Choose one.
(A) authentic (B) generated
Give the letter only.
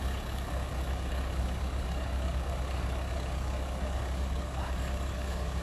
B